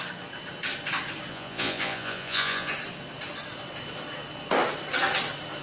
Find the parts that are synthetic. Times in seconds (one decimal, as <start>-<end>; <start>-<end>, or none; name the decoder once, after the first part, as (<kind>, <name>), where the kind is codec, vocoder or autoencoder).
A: 1.3-2.7 (vocoder, Vocos)